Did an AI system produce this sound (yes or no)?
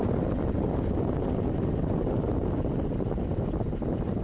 no